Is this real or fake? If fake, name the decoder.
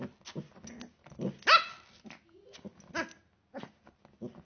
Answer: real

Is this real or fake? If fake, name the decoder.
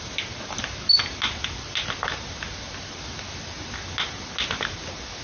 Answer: real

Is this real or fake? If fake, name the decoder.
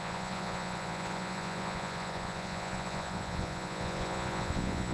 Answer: fake, vocoder, Vocos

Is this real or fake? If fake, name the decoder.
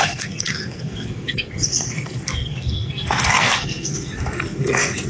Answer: fake, codec, SNAC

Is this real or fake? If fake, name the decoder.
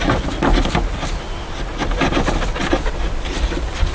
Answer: real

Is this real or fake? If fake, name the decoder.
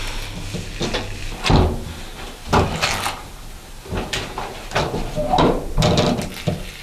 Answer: real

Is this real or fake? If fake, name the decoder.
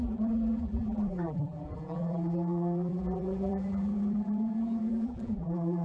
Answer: fake, vocoder, BigVGAN v2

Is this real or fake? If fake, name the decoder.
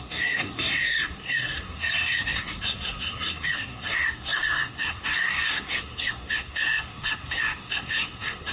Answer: fake, codec, SNAC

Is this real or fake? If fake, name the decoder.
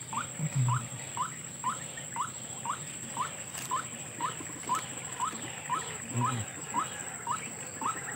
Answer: real